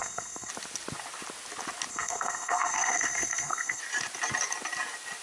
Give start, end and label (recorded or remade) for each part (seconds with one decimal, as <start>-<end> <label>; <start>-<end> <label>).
0.0-0.5 remade; 0.5-1.9 recorded; 1.9-3.8 remade; 3.8-5.2 recorded